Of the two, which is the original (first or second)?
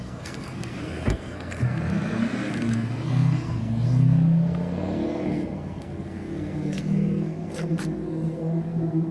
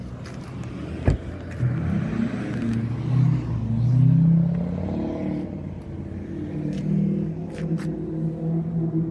second